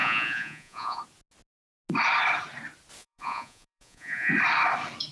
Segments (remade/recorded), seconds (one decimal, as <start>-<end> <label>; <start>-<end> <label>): 0.0-1.0 remade; 1.0-3.0 recorded; 3.0-4.3 remade; 4.3-5.1 recorded